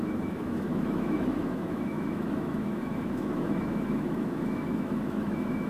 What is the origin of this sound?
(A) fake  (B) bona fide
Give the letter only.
A